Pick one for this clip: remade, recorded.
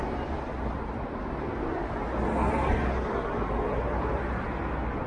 recorded